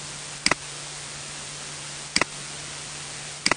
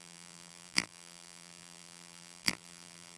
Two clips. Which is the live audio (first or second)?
first